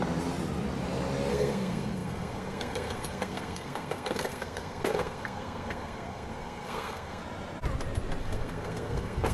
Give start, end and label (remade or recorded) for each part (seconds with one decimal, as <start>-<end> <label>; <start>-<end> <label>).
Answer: 0.0-1.3 recorded; 1.3-7.2 remade; 7.2-8.2 recorded; 8.2-9.3 remade